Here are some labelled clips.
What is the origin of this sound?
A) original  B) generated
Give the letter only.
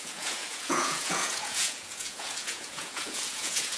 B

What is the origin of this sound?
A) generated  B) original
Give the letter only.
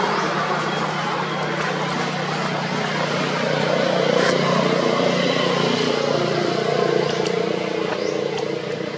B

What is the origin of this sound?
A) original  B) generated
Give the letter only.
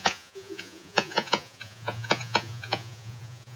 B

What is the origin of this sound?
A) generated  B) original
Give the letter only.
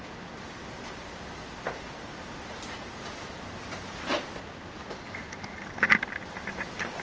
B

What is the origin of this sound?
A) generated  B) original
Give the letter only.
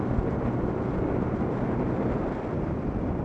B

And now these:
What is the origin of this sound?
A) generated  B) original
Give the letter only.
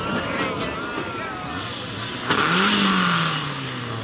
B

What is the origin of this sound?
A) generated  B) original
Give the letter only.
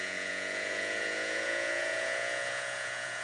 A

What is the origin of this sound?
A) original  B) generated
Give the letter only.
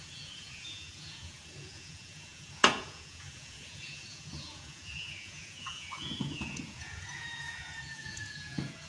B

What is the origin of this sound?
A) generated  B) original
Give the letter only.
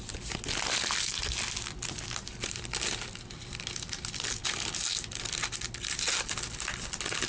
B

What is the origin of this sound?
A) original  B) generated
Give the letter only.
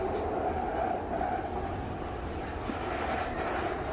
A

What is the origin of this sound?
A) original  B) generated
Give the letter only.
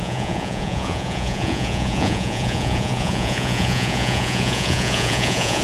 B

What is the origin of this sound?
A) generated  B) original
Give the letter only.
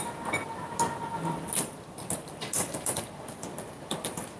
B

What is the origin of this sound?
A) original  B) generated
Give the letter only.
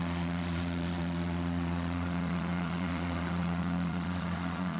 B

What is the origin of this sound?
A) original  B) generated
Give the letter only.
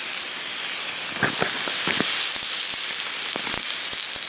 A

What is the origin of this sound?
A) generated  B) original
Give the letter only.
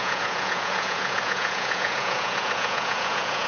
A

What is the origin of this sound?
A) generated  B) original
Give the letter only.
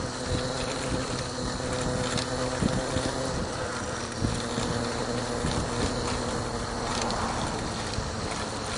B